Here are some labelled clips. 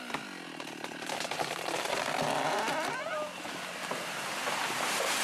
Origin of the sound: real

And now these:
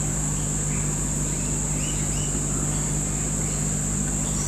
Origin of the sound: real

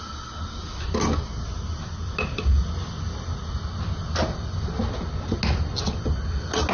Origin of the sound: real